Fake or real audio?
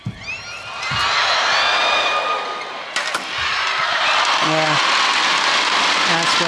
real